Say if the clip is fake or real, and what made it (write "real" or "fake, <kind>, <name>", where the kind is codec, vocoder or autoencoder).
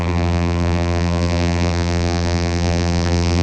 fake, vocoder, BigVGAN v2